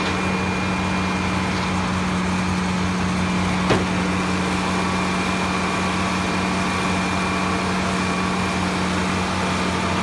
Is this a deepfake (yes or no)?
no